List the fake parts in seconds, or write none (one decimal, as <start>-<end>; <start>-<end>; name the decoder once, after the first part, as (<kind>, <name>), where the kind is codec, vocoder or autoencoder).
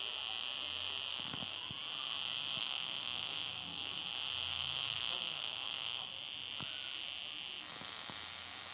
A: 1.1-1.7 (codec, DAC); 2.6-4.0; 4.5-6.1